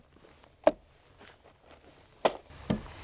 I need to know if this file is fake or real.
real